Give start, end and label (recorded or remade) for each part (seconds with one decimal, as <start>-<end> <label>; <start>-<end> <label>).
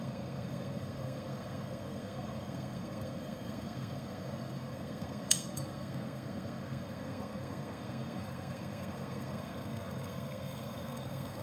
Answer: 0.0-11.4 remade